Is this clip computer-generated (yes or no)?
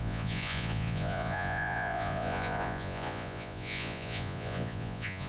yes